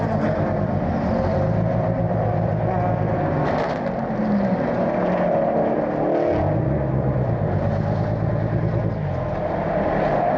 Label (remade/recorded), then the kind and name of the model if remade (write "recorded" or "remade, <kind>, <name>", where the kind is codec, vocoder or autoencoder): recorded